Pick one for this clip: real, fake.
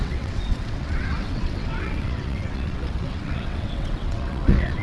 fake